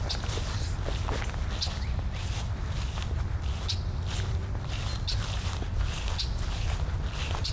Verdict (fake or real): real